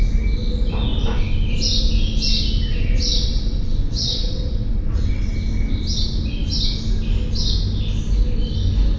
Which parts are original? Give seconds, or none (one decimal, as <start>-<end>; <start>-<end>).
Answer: 0.0-2.7; 5.3-9.0